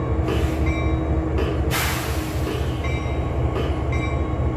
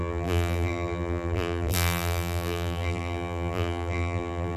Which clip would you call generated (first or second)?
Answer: second